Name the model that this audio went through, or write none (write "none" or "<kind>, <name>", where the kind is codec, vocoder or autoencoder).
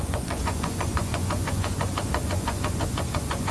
vocoder, Vocos